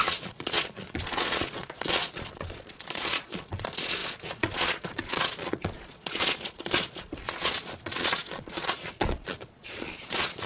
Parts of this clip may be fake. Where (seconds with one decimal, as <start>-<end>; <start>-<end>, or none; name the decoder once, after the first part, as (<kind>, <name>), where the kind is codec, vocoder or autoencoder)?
0.0-10.5 (vocoder, Vocos)